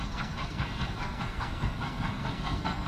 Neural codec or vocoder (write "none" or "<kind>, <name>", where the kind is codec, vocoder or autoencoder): codec, SNAC